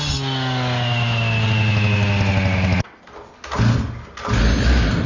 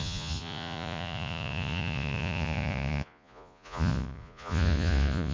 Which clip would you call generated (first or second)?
second